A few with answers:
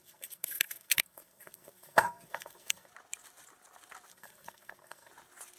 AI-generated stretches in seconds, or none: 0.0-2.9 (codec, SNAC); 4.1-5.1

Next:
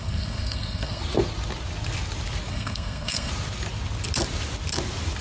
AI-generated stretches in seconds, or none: 0.0-1.0 (codec, SNAC); 2.5-3.3

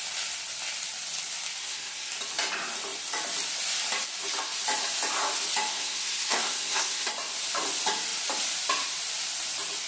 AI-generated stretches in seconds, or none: 1.6-2.1 (codec, SNAC); 5.7-7.1

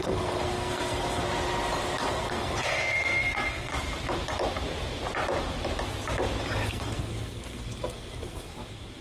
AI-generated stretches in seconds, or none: 0.0-1.3 (codec, SNAC); 2.1-3.7; 6.7-9.0

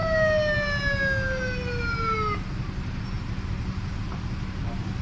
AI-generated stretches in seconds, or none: none

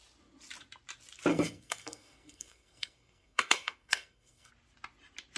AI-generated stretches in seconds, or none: 1.3-4.5 (codec, SNAC)

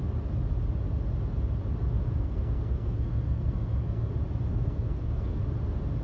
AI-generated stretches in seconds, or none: 2.1-4.1 (codec, SNAC); 4.5-5.4